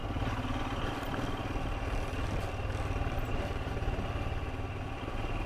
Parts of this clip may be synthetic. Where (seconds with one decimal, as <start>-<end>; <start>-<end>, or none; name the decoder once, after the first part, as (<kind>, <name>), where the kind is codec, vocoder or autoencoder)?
0.0-0.9 (vocoder, BigVGAN v2); 1.4-3.7